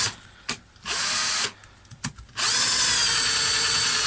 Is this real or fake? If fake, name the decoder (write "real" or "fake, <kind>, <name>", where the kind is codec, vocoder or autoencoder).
real